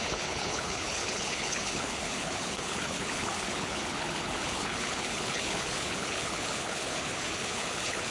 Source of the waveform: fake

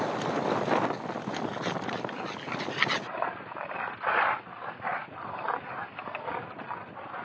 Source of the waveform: real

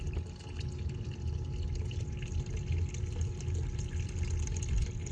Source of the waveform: real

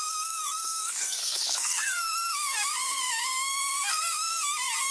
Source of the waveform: fake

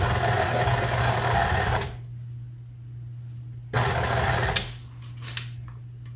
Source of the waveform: real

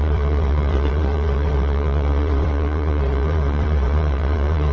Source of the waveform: fake